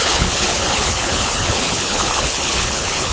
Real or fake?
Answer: fake